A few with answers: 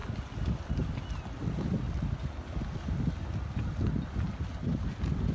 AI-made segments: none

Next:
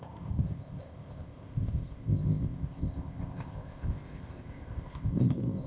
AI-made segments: 0.0-5.7 (codec, ZipCodec)

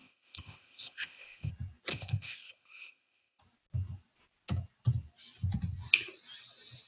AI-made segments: 0.0-1.5 (codec, ZipCodec); 1.9-3.4

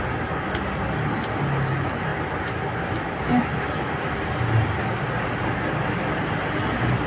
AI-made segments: none